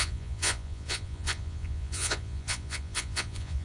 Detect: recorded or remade remade